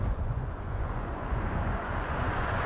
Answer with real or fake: fake